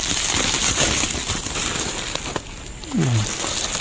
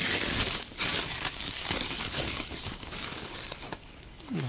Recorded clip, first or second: first